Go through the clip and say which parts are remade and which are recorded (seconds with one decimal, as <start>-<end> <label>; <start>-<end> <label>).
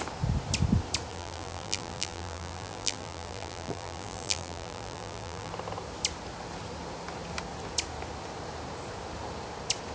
0.0-1.1 recorded; 1.1-5.5 remade; 5.5-9.9 recorded